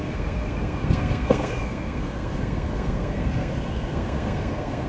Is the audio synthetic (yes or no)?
yes